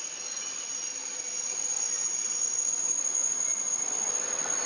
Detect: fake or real real